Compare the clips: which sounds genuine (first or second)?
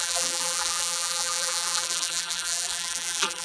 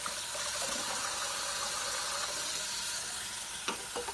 second